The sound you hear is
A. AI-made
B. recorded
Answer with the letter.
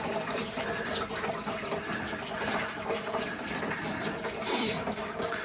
B